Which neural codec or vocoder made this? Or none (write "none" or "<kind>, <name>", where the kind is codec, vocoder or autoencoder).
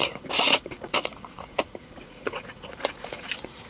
vocoder, Vocos